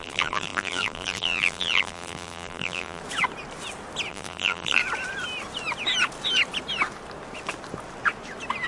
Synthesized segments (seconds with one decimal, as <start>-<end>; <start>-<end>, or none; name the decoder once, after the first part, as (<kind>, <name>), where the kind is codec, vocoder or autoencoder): 0.0-3.0 (vocoder, BigVGAN v2); 4.1-4.8